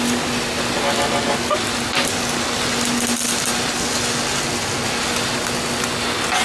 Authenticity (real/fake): real